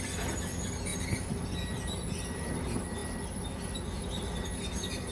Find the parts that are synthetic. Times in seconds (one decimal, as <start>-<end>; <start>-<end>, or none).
none